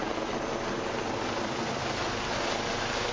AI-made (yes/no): no